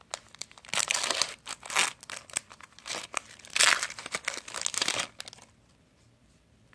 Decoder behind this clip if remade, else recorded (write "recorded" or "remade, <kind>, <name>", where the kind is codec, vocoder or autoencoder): recorded